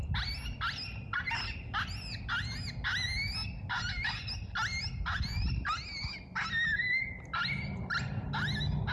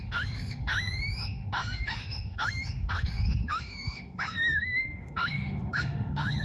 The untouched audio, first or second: first